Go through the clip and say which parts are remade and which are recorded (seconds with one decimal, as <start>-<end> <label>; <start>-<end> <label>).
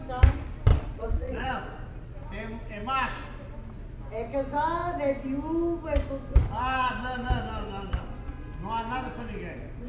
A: 0.0-0.7 recorded; 0.7-1.5 remade; 1.5-9.9 recorded